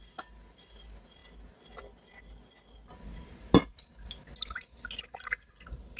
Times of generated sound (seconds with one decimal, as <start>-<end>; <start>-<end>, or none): none